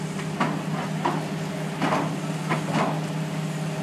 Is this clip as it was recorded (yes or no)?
yes